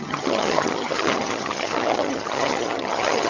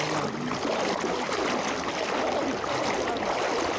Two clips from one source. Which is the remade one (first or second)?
first